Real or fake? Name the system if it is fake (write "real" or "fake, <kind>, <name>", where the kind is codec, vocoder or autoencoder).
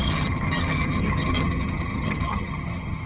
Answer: fake, vocoder, HiFi-GAN